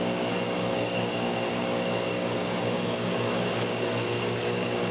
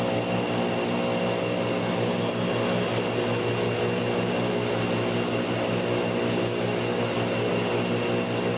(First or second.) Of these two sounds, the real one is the second